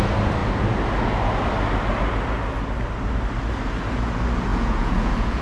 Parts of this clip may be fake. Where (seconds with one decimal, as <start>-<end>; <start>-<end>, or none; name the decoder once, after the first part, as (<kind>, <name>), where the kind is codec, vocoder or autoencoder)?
4.5-5.4 (vocoder, Vocos)